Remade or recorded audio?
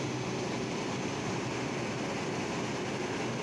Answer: recorded